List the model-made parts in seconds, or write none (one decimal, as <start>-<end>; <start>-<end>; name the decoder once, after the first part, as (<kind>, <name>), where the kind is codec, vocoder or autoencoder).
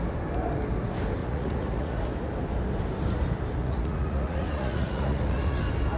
1.2-2.0 (vocoder, Vocos); 3.6-5.6